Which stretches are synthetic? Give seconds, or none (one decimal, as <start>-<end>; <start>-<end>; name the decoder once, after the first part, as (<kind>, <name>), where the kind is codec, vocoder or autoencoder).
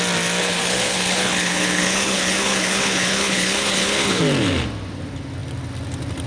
0.4-4.2 (codec, HILCodec)